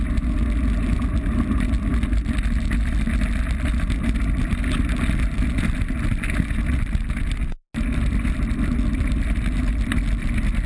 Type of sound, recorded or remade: recorded